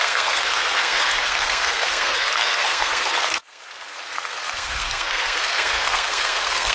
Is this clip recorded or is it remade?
remade